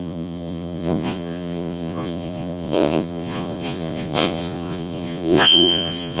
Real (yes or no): no